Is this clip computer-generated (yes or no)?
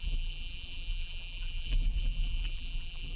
yes